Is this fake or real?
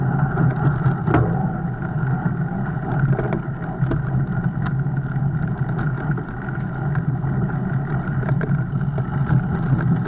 real